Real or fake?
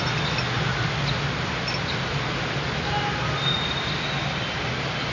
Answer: real